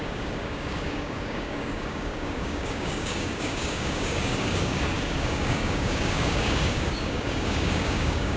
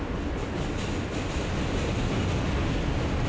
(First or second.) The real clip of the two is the second